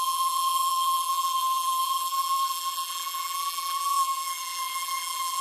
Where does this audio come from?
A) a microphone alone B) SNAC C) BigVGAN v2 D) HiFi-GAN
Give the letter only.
C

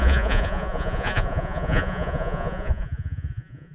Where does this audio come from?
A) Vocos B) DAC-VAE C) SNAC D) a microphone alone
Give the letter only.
A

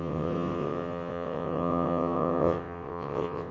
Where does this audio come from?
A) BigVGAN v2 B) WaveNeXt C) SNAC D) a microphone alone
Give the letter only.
B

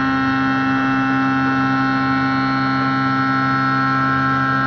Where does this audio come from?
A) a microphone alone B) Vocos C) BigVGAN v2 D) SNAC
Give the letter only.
A